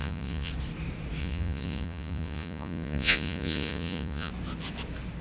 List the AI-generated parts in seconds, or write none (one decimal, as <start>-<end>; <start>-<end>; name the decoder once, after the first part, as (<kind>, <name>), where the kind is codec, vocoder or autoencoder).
0.0-0.5 (vocoder, Vocos); 1.2-4.3